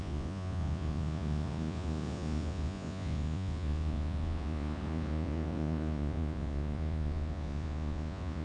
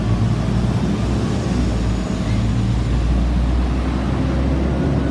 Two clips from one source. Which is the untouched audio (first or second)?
second